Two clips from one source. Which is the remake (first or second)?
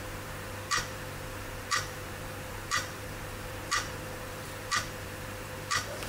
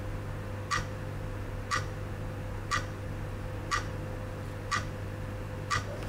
first